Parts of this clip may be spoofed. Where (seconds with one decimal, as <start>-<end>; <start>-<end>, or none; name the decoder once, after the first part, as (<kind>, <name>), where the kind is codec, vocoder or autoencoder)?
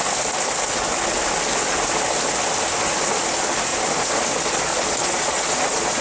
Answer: 3.7-4.3 (vocoder, Vocos); 4.7-6.0